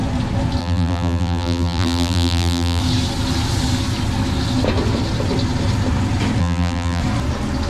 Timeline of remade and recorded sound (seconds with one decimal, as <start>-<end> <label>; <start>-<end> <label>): 0.0-0.6 recorded; 0.6-2.8 remade; 2.8-6.4 recorded; 6.4-7.0 remade; 7.0-7.7 recorded